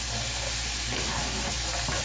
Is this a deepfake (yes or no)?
no